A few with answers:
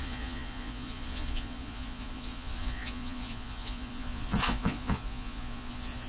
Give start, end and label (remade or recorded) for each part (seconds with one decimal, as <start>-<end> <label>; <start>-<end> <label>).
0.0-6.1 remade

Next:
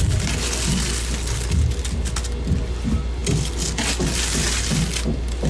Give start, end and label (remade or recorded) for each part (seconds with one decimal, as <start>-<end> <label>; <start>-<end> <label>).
0.0-5.5 recorded

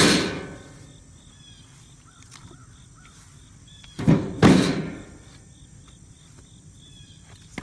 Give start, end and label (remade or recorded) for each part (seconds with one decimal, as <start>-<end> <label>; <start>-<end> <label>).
0.0-7.6 recorded

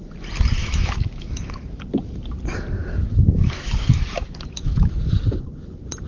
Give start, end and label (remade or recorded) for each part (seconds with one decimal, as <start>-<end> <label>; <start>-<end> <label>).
0.0-0.6 recorded; 0.6-1.8 remade; 1.8-2.8 recorded; 2.8-4.9 remade; 4.9-6.1 recorded

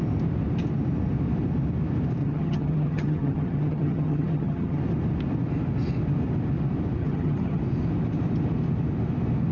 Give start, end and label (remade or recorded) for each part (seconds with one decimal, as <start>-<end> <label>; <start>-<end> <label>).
0.0-2.2 recorded; 2.2-4.8 remade; 4.8-7.0 recorded; 7.0-7.6 remade; 7.6-9.5 recorded